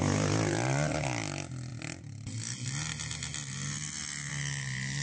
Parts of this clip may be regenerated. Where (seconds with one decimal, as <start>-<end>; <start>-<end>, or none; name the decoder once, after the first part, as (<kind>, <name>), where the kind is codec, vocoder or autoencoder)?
none